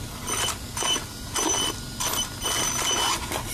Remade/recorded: recorded